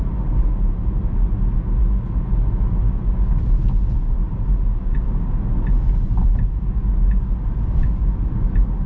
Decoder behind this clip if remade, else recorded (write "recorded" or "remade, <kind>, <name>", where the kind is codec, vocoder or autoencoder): recorded